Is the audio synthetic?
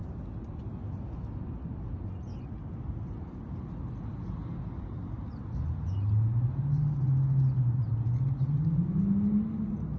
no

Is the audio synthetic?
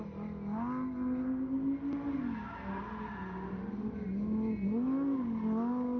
no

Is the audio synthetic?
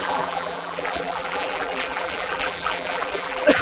yes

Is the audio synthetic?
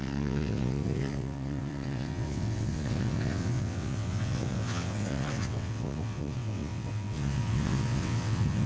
yes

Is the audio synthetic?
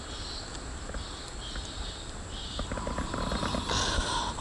no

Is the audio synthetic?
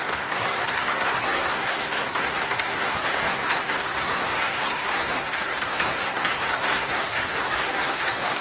yes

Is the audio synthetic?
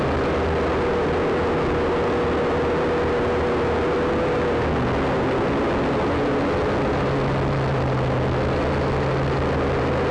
no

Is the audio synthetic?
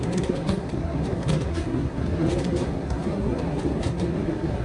yes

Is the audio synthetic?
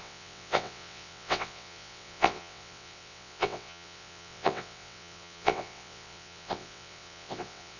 yes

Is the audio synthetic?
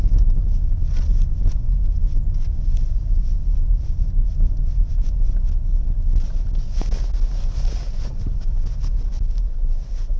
no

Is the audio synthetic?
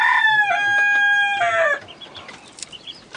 no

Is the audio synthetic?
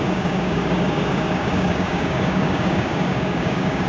yes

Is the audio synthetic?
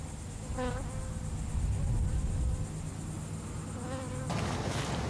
no